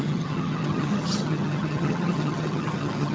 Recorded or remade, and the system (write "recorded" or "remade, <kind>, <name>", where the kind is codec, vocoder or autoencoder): remade, vocoder, HiFi-GAN